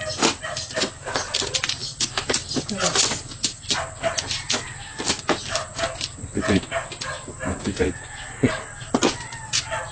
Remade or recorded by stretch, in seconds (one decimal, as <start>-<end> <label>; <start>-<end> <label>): 0.0-9.9 recorded